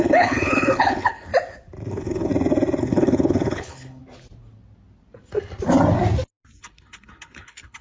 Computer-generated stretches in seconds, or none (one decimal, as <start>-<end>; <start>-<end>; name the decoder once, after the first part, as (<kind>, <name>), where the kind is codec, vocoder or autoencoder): 0.0-1.3 (codec, HILCodec); 1.9-2.3; 2.8-4.0; 6.6-7.8